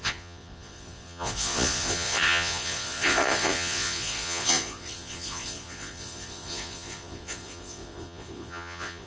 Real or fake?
fake